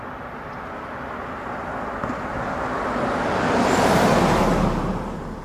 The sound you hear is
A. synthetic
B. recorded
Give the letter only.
B